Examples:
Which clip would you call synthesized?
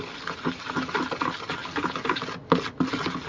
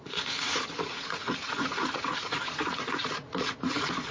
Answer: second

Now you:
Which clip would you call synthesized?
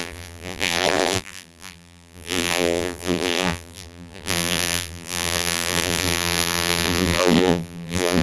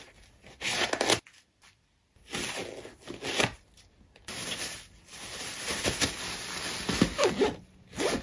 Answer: first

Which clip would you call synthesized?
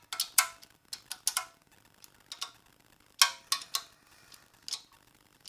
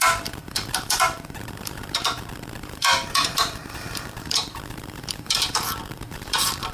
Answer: second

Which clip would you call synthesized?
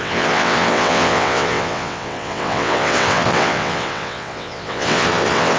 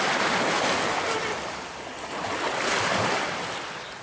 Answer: first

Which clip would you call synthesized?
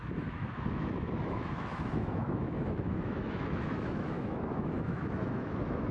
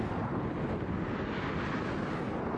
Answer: first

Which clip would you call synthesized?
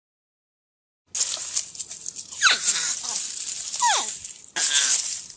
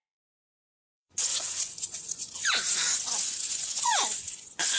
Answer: second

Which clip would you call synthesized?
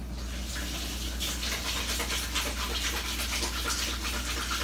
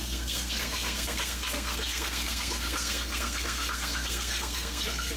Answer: second